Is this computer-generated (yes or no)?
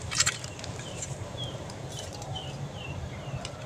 yes